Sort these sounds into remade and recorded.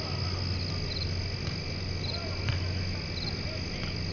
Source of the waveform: recorded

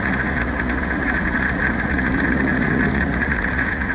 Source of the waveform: remade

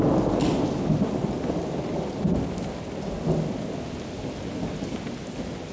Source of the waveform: recorded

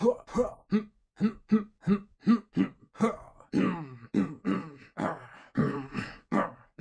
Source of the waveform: remade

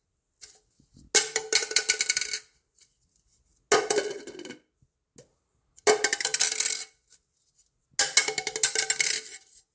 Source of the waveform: recorded